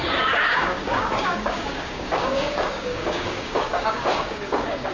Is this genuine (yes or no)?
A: no